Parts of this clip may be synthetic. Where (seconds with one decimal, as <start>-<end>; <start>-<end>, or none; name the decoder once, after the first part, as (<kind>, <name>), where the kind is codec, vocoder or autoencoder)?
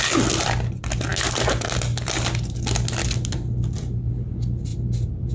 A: none